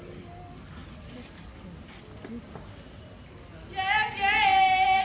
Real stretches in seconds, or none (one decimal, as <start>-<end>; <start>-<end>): 0.0-5.0